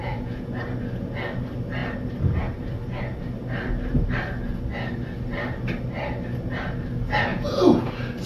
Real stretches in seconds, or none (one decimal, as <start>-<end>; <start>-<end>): 0.5-7.3; 7.9-8.3

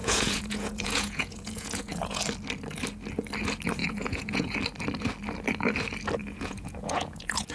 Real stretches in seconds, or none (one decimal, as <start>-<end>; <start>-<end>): 2.2-3.8; 4.5-6.2

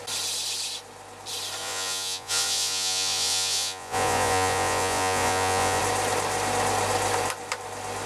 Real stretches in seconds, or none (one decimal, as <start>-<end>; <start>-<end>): 0.0-1.6; 5.8-8.1